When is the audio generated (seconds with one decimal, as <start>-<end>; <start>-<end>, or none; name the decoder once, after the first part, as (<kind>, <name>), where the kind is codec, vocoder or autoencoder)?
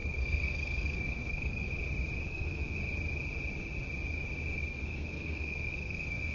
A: 0.0-1.7 (codec, SNAC); 2.3-2.8; 4.6-6.3